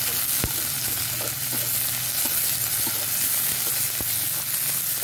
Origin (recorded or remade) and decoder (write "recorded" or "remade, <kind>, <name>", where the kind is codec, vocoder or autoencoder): recorded